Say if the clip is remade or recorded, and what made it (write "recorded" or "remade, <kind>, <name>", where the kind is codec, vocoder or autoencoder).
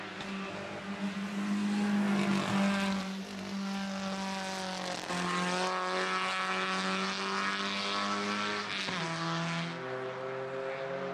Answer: recorded